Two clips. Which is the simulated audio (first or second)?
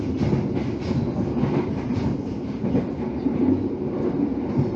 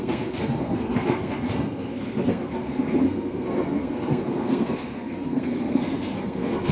second